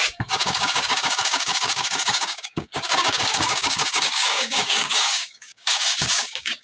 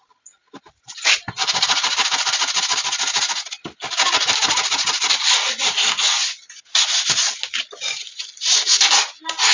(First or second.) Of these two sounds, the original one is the second